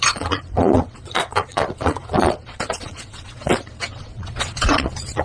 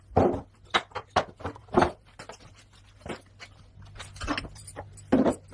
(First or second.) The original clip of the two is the second